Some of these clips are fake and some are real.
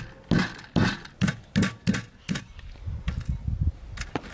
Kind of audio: real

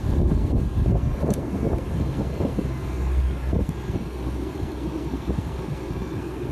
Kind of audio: fake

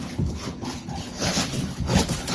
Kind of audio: fake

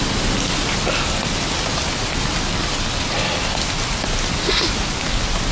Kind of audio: real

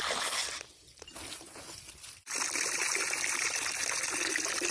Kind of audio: real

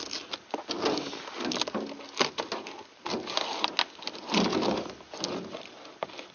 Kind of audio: real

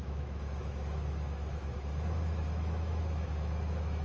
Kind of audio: fake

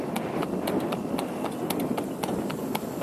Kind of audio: fake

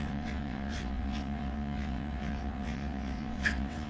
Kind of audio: fake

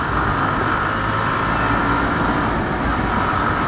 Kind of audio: fake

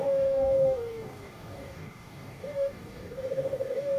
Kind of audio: fake